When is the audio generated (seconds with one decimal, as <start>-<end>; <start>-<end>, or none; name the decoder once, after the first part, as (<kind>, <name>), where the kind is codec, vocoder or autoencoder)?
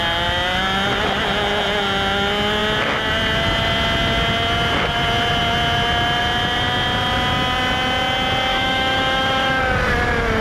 8.5-9.6 (autoencoder, DAC-VAE)